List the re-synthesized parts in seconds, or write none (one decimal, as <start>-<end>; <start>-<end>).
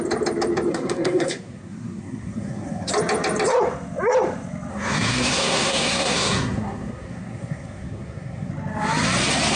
0.7-2.9; 4.7-8.5